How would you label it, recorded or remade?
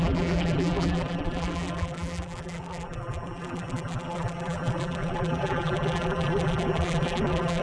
remade